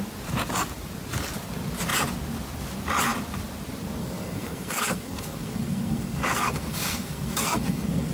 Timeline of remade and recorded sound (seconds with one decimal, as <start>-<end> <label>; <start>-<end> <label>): 0.0-4.0 recorded; 4.0-8.1 remade